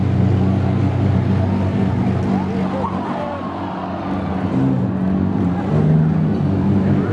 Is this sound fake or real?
real